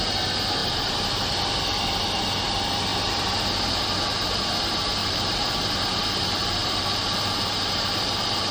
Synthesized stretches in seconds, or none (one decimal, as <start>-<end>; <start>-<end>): 0.6-1.4; 5.0-5.6; 6.6-8.5